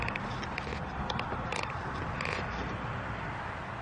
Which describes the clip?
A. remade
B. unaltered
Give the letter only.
B